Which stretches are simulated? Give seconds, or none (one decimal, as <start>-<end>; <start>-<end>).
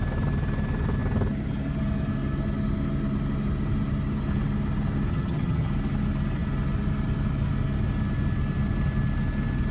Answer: 5.1-5.7